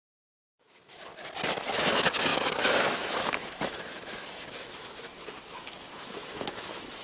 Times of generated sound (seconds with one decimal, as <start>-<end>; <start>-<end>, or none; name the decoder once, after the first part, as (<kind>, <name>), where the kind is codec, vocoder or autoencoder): 0.0-1.1 (autoencoder, DAC-VAE); 1.7-7.0